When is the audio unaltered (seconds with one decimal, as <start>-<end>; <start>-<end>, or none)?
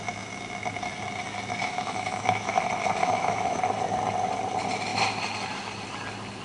0.0-1.6; 2.6-3.0; 3.6-6.4